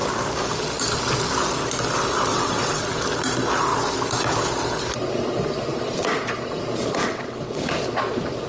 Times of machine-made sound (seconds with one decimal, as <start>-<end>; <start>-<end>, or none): 2.3-2.8; 7.0-7.6